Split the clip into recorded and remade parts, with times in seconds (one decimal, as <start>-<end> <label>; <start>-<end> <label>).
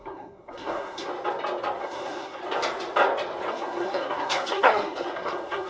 0.0-1.1 remade; 1.1-1.8 recorded; 1.8-2.4 remade; 2.4-3.5 recorded; 3.5-5.7 remade